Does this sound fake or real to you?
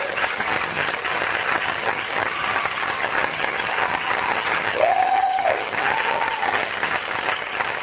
fake